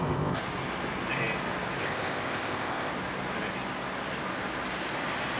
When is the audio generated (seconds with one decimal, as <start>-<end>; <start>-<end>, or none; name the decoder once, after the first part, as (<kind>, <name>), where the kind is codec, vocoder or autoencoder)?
0.0-0.4 (codec, ZipCodec); 1.8-2.9